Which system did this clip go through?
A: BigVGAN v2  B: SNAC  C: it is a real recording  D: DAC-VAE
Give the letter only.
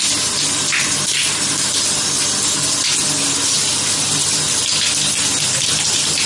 C